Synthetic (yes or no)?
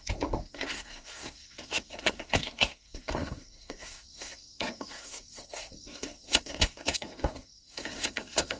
yes